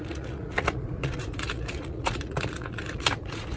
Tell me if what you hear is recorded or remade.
remade